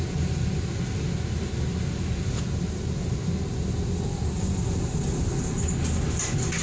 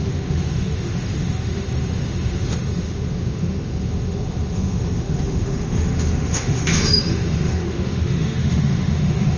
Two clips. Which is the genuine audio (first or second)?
first